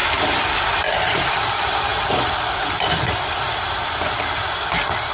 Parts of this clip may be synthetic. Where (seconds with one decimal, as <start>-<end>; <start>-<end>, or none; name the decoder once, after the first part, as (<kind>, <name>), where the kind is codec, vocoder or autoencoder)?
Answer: 0.0-5.1 (vocoder, BigVGAN v2)

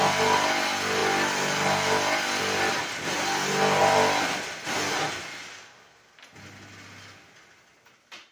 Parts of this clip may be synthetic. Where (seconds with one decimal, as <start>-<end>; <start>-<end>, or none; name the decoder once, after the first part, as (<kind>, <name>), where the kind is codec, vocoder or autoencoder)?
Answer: 3.8-6.2 (vocoder, BigVGAN v2)